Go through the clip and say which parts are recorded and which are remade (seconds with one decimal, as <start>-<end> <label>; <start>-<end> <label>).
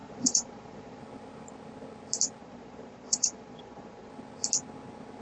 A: 0.0-1.0 remade; 1.0-2.4 recorded; 2.4-4.1 remade; 4.1-5.2 recorded